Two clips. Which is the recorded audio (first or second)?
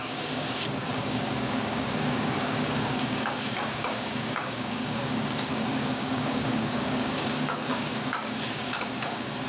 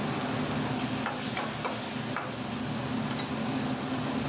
second